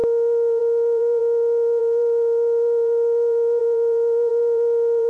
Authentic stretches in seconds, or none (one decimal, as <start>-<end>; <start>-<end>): 1.2-1.8